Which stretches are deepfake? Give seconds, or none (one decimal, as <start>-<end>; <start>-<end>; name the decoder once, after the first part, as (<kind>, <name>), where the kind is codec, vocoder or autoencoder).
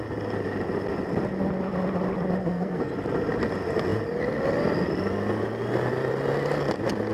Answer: 2.4-2.9 (codec, SNAC)